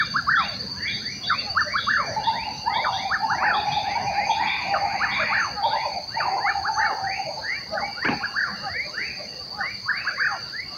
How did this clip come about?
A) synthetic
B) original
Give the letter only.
B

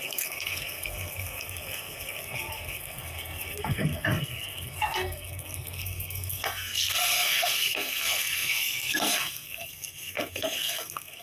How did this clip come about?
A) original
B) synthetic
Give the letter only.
B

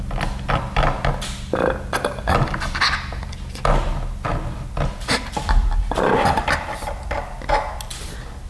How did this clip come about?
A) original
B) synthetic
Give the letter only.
A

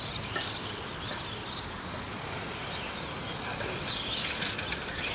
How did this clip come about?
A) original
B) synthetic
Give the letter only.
A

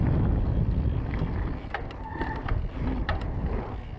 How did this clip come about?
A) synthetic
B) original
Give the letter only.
B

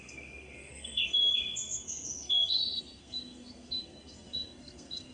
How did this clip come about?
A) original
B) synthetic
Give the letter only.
B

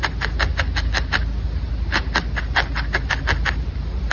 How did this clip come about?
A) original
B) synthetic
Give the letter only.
A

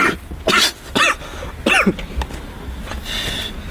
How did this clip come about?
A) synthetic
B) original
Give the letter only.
B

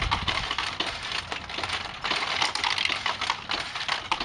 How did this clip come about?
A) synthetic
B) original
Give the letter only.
B